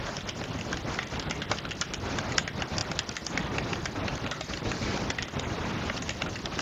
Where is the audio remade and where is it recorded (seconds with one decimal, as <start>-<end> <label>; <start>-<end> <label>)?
0.0-6.6 recorded